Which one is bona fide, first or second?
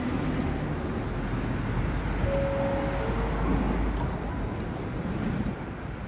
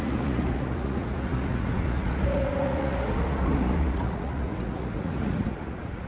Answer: first